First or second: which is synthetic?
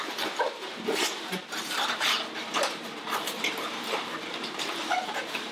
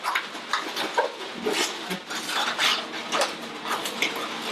first